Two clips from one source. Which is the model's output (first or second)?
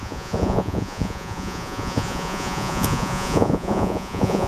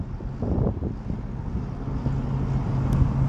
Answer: first